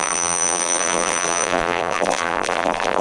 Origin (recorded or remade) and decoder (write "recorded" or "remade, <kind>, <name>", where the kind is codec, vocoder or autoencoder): remade, vocoder, BigVGAN v2